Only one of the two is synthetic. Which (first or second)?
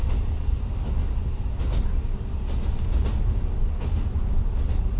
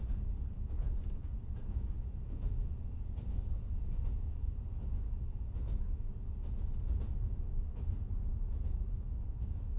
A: second